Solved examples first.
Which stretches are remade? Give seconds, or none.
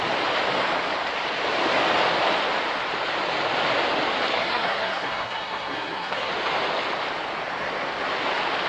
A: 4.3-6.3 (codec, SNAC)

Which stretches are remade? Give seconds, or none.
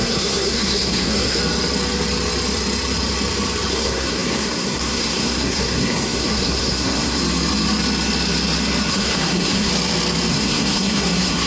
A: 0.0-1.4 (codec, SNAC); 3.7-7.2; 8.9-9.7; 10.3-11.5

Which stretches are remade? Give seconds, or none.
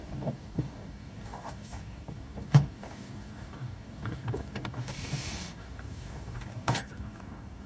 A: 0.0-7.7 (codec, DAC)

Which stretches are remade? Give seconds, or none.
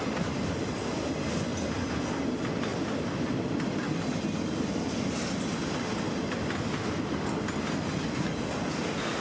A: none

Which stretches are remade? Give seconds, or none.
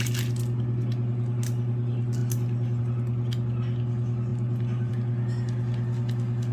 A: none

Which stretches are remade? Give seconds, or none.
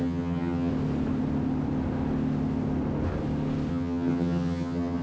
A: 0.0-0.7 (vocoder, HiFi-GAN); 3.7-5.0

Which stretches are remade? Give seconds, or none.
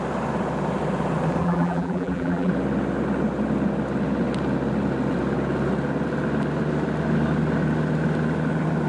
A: 1.4-2.5 (vocoder, BigVGAN v2)